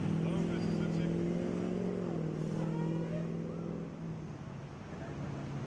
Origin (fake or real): real